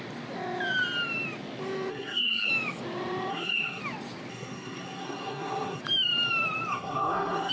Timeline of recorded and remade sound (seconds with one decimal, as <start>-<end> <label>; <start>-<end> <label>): 0.0-1.9 recorded; 1.9-2.5 remade; 2.5-3.3 recorded; 3.3-3.8 remade; 3.8-4.3 recorded; 4.3-5.8 remade; 5.8-6.7 recorded; 6.7-7.5 remade